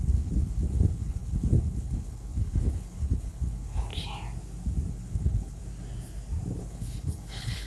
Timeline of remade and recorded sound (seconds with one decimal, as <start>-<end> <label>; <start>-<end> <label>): 0.0-3.9 remade; 3.9-4.9 recorded; 4.9-5.6 remade; 5.6-6.6 recorded; 6.6-7.7 remade